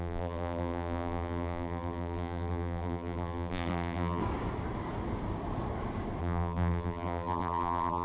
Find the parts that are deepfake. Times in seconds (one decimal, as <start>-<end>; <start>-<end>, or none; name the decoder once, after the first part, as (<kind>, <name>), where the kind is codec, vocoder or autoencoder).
0.0-4.2 (vocoder, BigVGAN v2); 6.2-8.0